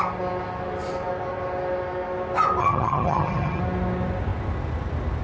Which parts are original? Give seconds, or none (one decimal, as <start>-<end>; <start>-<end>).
0.0-2.6; 3.6-5.2